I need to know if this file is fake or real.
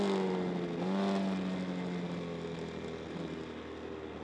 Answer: real